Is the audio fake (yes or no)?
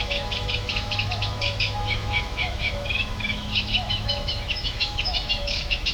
yes